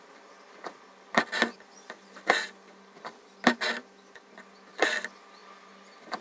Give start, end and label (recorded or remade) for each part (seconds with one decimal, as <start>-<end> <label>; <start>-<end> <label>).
0.0-6.2 recorded